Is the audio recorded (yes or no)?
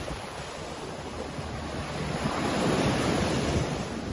yes